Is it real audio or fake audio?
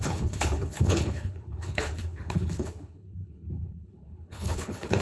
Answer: fake